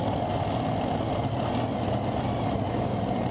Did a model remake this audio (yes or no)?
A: no